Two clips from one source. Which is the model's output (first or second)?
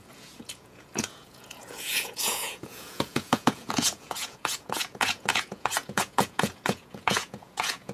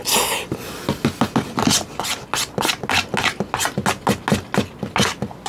first